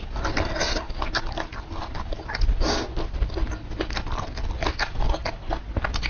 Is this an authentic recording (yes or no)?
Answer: yes